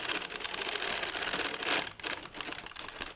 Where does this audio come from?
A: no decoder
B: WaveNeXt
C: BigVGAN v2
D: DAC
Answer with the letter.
A